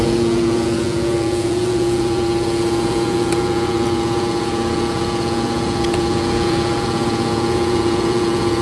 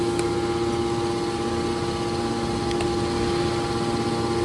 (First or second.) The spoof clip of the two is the first